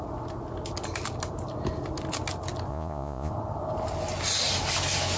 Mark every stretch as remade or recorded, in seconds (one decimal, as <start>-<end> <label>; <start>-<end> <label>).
0.0-2.7 recorded; 2.7-3.3 remade; 3.3-5.2 recorded